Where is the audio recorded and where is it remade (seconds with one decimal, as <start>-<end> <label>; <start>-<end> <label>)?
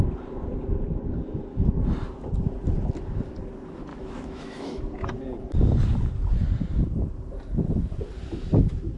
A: 0.0-3.9 recorded; 3.9-4.8 remade; 4.8-9.0 recorded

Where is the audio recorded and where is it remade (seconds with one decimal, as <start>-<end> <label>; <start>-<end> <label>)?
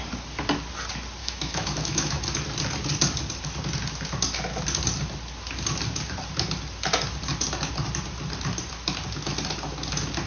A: 0.0-1.2 recorded; 1.2-2.2 remade; 2.2-10.3 recorded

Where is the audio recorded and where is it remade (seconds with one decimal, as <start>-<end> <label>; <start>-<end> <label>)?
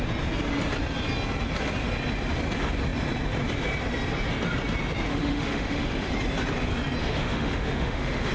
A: 0.0-5.1 recorded; 5.1-6.1 remade; 6.1-7.0 recorded; 7.0-8.3 remade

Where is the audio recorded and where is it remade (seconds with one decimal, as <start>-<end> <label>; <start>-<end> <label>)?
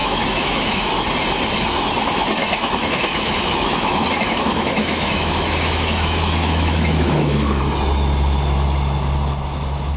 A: 0.0-0.9 remade; 0.9-2.4 recorded; 2.4-7.6 remade; 7.6-10.0 recorded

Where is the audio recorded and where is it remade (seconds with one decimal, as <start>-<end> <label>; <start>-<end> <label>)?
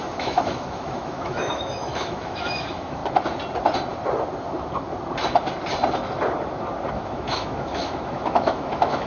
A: 0.0-3.0 remade; 3.0-6.9 recorded; 6.9-9.1 remade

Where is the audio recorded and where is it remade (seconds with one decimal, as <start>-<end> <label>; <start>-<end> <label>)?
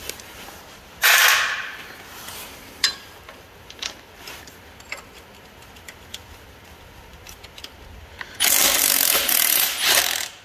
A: 0.0-10.4 recorded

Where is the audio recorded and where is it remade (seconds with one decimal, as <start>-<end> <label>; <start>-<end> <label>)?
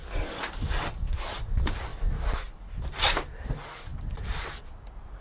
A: 0.0-5.2 recorded